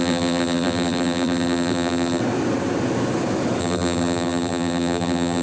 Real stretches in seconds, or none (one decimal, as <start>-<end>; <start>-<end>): 2.2-3.6